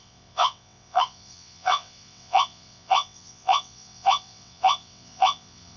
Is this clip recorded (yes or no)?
no